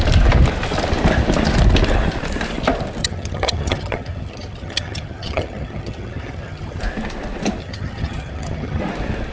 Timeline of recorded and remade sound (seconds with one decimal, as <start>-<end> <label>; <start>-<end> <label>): 0.0-3.0 recorded; 3.0-6.8 remade; 6.8-7.6 recorded; 7.6-8.8 remade; 8.8-9.3 recorded